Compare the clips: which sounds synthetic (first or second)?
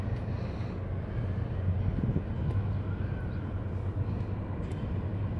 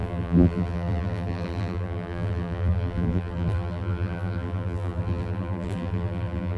second